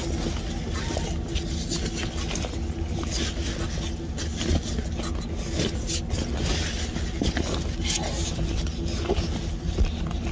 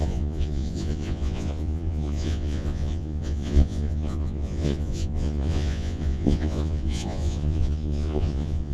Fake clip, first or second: second